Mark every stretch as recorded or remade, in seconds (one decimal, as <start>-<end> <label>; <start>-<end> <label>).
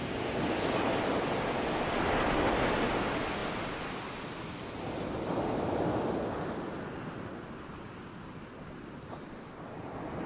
0.0-10.3 recorded